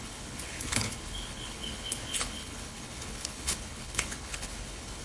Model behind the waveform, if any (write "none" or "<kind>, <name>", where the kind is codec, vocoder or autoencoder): codec, HILCodec